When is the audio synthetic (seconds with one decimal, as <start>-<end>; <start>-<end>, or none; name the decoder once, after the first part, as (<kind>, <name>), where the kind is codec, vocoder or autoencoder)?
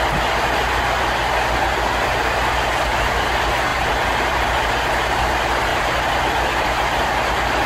3.7-4.7 (vocoder, BigVGAN v2); 5.7-6.2